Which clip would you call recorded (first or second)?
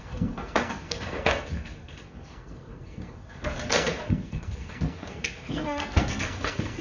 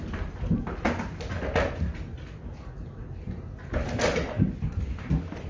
second